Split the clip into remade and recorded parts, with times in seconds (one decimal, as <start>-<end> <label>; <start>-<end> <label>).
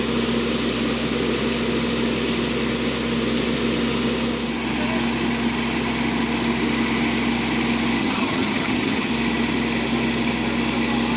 0.0-8.0 recorded; 8.0-9.1 remade; 9.1-11.2 recorded